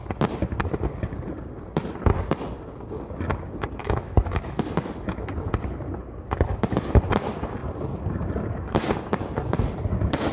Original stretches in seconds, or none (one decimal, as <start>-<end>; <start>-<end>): 0.0-3.8; 4.6-10.3